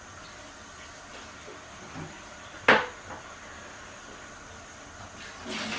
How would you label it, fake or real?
real